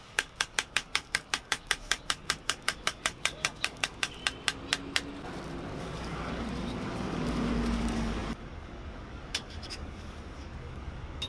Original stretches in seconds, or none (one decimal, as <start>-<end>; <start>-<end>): 4.2-5.8